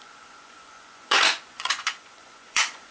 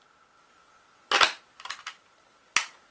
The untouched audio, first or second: second